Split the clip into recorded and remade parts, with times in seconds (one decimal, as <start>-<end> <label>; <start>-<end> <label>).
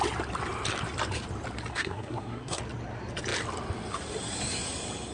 0.0-1.7 recorded; 1.7-2.6 remade; 2.6-5.1 recorded